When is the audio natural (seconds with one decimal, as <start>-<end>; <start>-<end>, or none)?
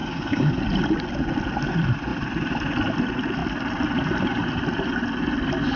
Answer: 0.5-5.8